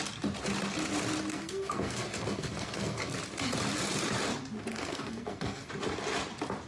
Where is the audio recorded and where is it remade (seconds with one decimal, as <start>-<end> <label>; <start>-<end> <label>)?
0.0-1.3 recorded; 1.3-3.2 remade; 3.2-4.7 recorded; 4.7-5.7 remade; 5.7-6.7 recorded